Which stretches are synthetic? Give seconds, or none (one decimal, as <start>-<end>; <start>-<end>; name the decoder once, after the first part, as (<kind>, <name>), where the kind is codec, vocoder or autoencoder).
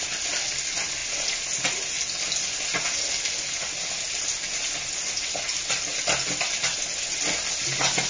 none